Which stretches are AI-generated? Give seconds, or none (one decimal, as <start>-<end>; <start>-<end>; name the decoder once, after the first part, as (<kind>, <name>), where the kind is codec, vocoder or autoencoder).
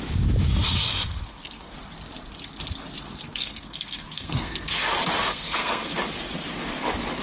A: 0.9-1.7 (codec, SNAC); 3.3-4.5; 5.3-5.9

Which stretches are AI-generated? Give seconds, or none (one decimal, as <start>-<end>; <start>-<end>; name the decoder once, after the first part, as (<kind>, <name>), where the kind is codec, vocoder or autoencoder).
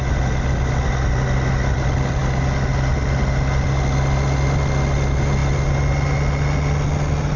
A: none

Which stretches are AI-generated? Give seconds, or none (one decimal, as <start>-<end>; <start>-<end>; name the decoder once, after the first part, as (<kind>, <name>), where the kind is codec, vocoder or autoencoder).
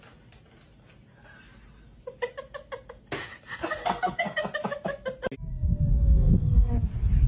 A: 3.8-4.4 (codec, SNAC); 5.5-6.7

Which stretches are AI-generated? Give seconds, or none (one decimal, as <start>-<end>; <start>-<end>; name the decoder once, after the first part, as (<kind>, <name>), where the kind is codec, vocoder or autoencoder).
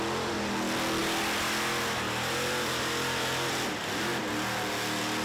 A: none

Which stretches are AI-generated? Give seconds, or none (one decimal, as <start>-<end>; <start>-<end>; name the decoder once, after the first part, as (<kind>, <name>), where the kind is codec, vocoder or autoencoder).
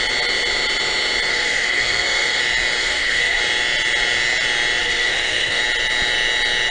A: 1.3-2.4 (codec, SNAC); 2.8-3.4; 4.8-5.6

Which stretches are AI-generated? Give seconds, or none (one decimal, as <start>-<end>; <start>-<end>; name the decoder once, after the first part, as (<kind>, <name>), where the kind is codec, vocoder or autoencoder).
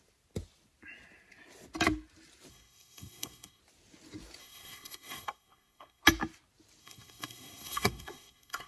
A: 2.5-3.6 (codec, SNAC); 4.4-6.0; 6.8-8.7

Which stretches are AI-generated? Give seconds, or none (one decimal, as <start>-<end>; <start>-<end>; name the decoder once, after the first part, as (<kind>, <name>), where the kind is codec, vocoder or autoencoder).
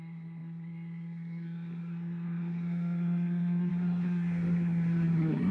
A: 0.0-5.5 (codec, SNAC)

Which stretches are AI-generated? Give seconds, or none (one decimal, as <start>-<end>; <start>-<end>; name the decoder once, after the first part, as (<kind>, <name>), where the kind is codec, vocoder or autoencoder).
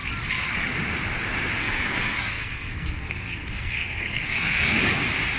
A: 1.6-4.8 (codec, SNAC)